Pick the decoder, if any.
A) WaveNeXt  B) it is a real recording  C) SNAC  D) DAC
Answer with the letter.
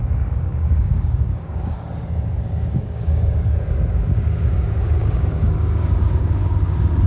D